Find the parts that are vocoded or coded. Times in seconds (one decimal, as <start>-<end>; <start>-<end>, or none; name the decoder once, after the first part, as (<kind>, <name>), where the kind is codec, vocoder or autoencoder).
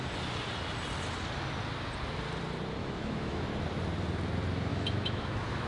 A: 2.8-3.4 (autoencoder, DAC-VAE); 4.7-5.7